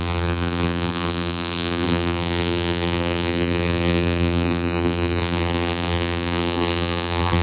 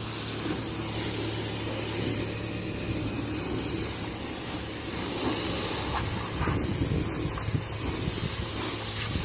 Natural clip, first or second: second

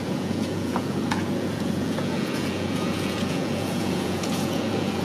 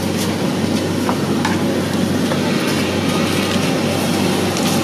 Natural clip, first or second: second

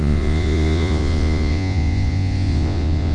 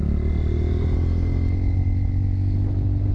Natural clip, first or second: second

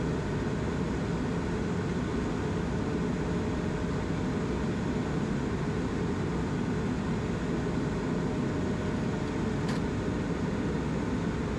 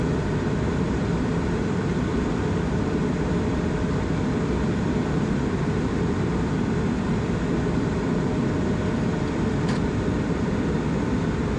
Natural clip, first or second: first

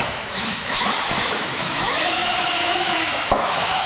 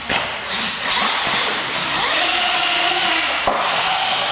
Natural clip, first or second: second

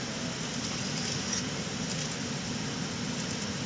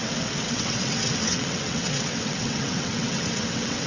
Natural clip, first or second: first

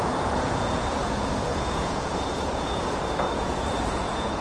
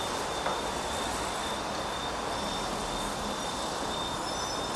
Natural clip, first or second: second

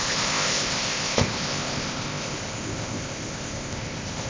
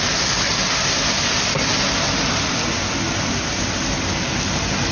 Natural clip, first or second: second